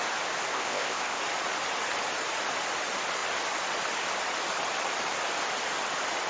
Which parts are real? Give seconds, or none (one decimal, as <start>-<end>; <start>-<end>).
0.0-0.5; 1.2-6.3